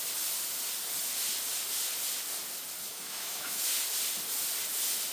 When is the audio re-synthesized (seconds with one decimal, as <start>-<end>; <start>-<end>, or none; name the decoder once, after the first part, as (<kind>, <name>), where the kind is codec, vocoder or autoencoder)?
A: 2.9-3.6 (autoencoder, DAC-VAE)